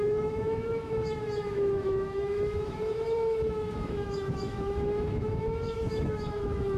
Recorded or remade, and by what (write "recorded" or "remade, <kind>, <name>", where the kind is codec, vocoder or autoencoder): remade, autoencoder, DAC-VAE